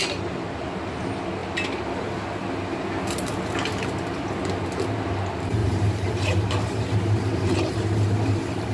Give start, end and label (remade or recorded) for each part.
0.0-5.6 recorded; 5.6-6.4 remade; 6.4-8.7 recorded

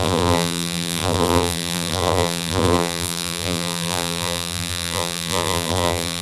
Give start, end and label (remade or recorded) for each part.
0.0-6.2 remade

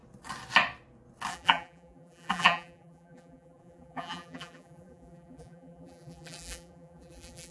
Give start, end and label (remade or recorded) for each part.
0.0-1.3 recorded; 1.3-7.5 remade

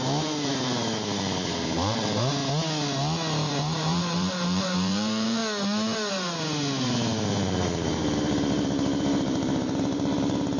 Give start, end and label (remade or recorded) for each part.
0.0-2.4 remade; 2.4-3.5 recorded; 3.5-5.4 remade; 5.4-6.1 recorded; 6.1-10.6 remade

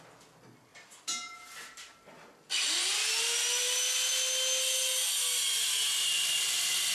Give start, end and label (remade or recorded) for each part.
0.0-6.9 recorded